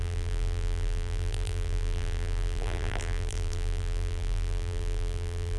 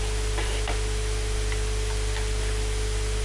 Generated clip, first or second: first